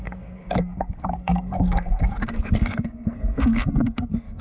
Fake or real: fake